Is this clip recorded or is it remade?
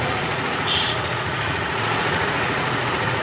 remade